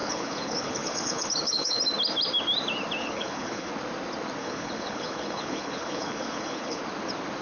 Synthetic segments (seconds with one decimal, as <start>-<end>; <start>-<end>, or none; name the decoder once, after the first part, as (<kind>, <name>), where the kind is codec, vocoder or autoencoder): 0.0-1.8 (codec, HILCodec); 3.0-3.7; 4.4-6.8